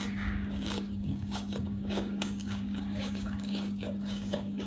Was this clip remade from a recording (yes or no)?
yes